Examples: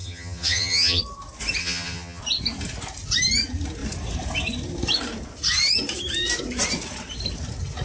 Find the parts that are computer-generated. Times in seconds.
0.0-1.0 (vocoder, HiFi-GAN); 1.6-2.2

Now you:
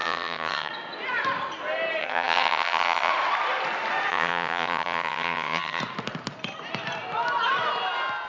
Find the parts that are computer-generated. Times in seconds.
0.0-0.7 (vocoder, HiFi-GAN); 2.0-3.1; 4.1-5.8

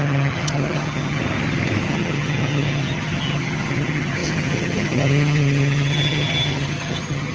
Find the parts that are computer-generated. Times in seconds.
0.0-1.2 (vocoder, HiFi-GAN); 1.8-7.3

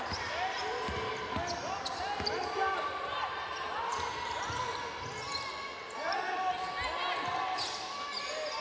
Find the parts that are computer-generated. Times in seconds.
none